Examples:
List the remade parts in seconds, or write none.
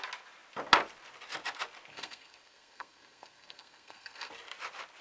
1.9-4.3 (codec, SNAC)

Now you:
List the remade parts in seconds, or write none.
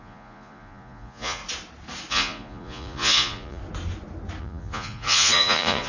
0.0-1.4 (vocoder, Vocos); 2.1-3.6; 4.4-5.9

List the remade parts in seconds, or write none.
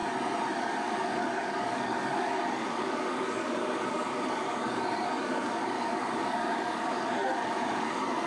0.6-8.3 (codec, DAC)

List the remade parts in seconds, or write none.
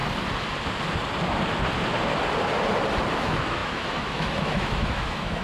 3.2-5.4 (autoencoder, DAC-VAE)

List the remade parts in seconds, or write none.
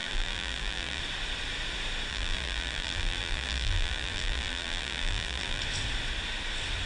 0.0-1.0 (vocoder, BigVGAN v2); 2.1-5.6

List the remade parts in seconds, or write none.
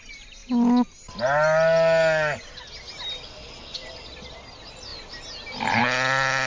none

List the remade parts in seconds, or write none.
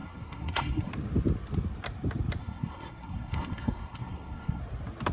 0.0-0.9 (codec, SNAC); 2.4-4.6